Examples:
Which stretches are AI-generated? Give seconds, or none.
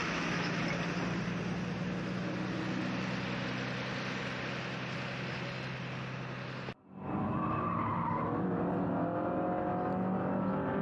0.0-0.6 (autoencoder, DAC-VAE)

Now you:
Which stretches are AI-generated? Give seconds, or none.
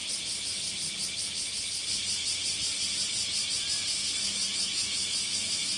4.5-5.8 (autoencoder, DAC-VAE)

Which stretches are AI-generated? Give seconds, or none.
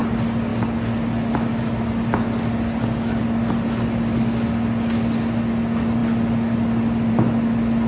none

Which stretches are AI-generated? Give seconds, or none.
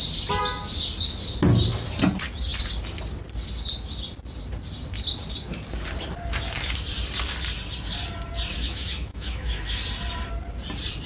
8.5-9.8 (autoencoder, DAC-VAE)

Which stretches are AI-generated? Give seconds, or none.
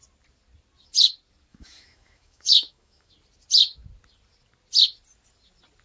1.5-3.1 (autoencoder, DAC-VAE)